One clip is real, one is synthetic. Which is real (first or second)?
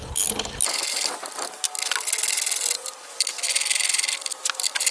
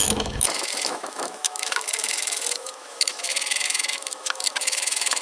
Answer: first